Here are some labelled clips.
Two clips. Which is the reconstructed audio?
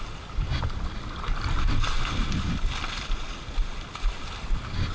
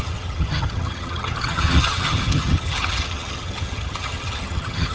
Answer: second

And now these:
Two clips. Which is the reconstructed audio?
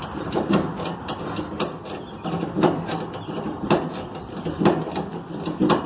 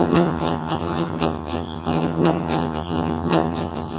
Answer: second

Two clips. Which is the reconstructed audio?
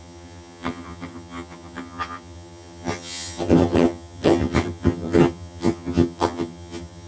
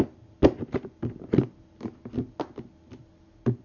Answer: first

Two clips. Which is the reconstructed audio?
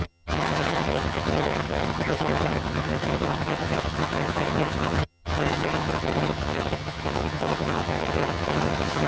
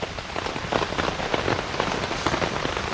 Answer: first